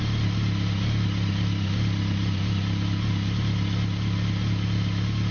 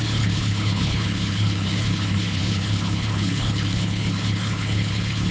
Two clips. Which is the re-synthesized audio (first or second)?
second